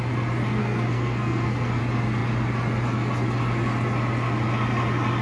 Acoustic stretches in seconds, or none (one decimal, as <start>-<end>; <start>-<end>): 0.0-0.6; 1.8-5.2